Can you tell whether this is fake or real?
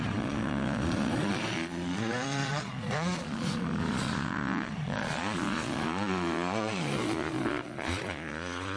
fake